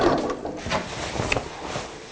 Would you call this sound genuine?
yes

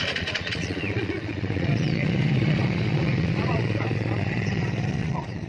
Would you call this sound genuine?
no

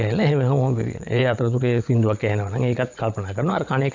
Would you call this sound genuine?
no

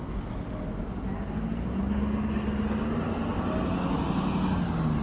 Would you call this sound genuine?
yes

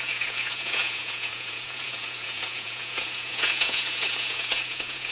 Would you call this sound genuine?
no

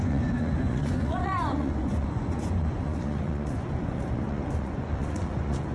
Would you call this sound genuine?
no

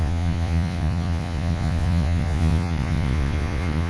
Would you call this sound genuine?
no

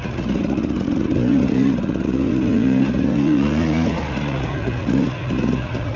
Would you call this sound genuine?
no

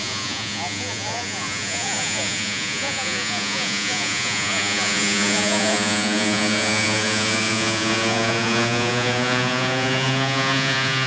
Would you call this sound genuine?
no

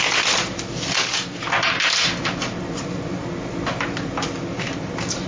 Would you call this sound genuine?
yes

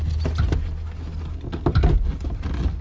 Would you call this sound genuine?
yes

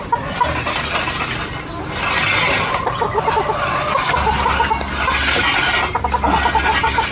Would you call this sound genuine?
yes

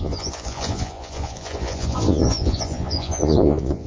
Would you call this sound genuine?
no